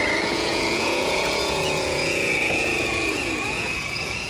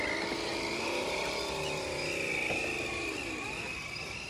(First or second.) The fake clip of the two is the first